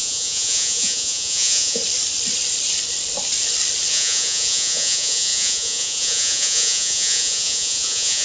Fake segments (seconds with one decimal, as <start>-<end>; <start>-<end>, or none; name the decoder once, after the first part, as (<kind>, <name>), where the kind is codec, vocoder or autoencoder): 0.0-1.8 (vocoder, Vocos); 3.9-8.2